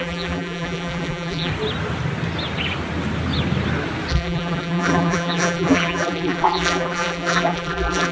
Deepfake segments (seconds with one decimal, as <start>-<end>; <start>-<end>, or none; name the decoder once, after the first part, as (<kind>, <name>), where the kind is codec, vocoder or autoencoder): 0.0-1.5 (vocoder, BigVGAN v2); 4.1-8.1